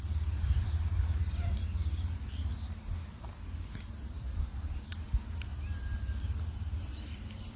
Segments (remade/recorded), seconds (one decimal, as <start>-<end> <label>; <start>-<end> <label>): 0.0-1.2 remade; 1.2-3.6 recorded; 3.6-4.9 remade; 4.9-6.6 recorded; 6.6-7.6 remade

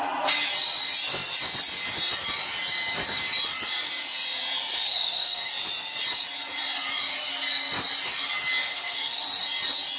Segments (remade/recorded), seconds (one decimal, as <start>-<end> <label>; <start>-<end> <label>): 0.0-4.7 recorded; 4.7-5.5 remade; 5.5-8.7 recorded; 8.7-9.2 remade; 9.2-10.0 recorded

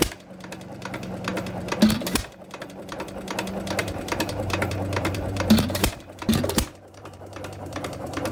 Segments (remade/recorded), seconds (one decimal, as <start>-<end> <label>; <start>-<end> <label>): 0.0-3.8 recorded; 3.8-8.3 remade

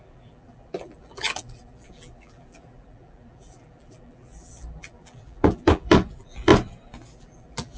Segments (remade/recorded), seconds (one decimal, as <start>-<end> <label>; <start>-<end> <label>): 0.0-6.5 remade; 6.5-7.2 recorded; 7.2-7.8 remade

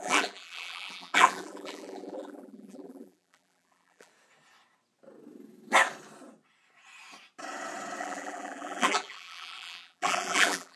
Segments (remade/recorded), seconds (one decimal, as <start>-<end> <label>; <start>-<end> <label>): 0.0-4.1 remade; 4.1-8.0 recorded; 8.0-10.8 remade